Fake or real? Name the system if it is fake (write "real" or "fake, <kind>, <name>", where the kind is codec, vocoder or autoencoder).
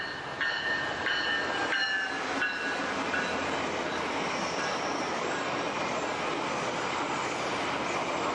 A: real